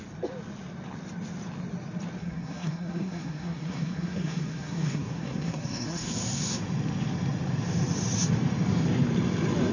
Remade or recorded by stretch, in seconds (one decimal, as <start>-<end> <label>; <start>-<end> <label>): 0.0-2.2 recorded; 2.2-6.6 remade; 6.6-9.7 recorded